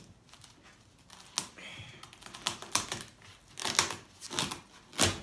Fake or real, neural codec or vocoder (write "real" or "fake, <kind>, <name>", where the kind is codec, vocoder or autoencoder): real